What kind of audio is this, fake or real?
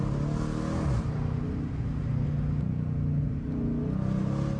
real